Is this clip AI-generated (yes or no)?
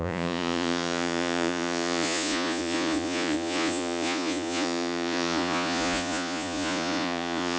yes